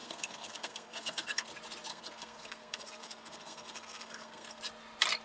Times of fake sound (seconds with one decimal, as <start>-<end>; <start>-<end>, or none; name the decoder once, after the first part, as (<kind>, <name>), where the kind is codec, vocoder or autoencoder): 0.0-1.5 (codec, SNAC); 1.9-4.6